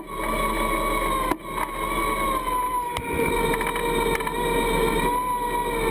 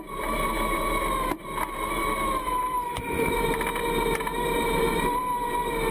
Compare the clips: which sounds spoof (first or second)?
second